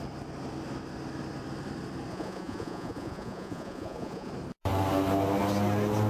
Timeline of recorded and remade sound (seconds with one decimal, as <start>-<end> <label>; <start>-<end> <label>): 0.0-2.1 recorded; 2.1-4.3 remade; 4.3-6.1 recorded